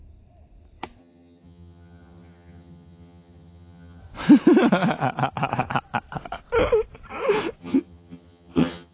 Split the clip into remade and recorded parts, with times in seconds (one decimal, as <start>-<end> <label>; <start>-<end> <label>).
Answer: 0.0-1.0 recorded; 1.0-4.0 remade; 4.0-7.6 recorded; 7.6-8.9 remade